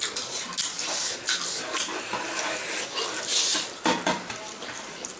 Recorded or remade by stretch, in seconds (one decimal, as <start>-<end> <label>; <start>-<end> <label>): 0.0-0.6 recorded; 0.6-1.1 remade; 1.1-3.5 recorded; 3.5-5.2 remade